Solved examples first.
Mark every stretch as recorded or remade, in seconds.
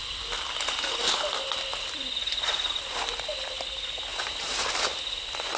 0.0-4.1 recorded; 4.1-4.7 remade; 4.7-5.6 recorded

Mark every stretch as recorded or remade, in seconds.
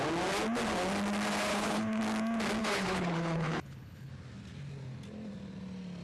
0.0-1.5 recorded; 1.5-2.0 remade; 2.0-2.6 recorded; 2.6-4.1 remade; 4.1-6.0 recorded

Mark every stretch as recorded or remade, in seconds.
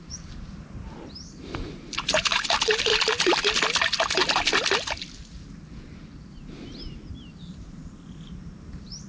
0.0-2.9 remade; 2.9-7.1 recorded; 7.1-9.1 remade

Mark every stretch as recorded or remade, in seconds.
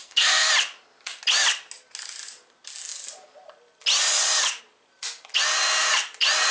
0.0-0.5 remade; 0.5-6.5 recorded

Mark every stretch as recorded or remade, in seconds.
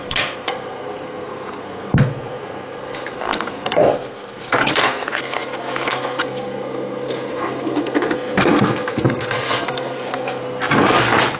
0.0-10.4 remade; 10.4-11.4 recorded